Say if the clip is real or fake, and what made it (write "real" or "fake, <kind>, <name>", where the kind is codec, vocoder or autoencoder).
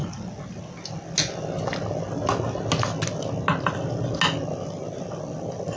real